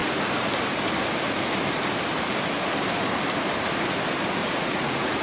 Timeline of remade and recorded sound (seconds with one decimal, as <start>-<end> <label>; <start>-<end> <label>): 0.0-4.4 recorded; 4.4-5.2 remade